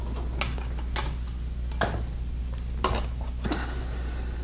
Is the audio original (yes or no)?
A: yes